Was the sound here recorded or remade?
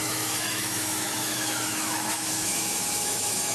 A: remade